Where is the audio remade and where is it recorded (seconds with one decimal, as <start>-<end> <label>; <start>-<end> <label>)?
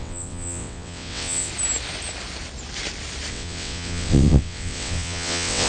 0.0-1.5 remade; 1.5-3.3 recorded; 3.3-5.7 remade